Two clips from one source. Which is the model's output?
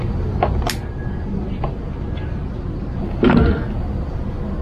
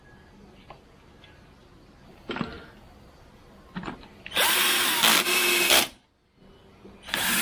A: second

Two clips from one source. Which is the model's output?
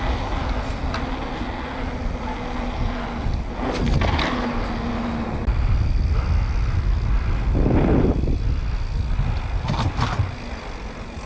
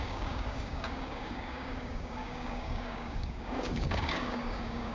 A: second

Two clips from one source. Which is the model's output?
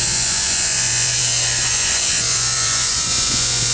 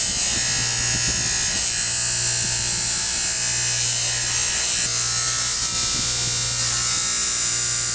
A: first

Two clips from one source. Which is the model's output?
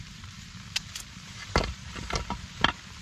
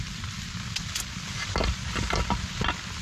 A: first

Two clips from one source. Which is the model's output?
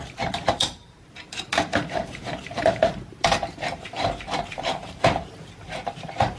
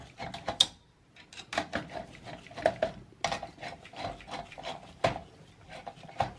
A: first